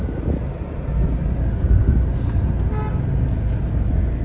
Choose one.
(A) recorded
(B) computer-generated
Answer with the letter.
A